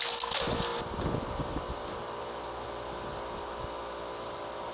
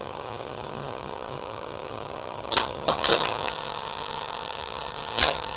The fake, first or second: second